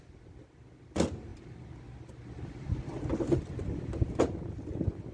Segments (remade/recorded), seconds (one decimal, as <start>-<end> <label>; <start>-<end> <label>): 0.0-5.1 recorded